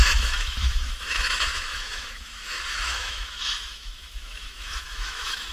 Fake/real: fake